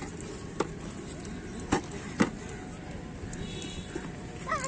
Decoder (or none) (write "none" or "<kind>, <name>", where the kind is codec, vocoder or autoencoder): none